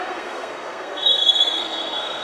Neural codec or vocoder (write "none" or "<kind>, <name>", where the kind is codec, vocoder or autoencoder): codec, SNAC